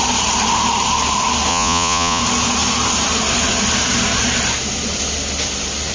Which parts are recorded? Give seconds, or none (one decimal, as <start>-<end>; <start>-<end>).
0.0-1.5; 2.2-5.9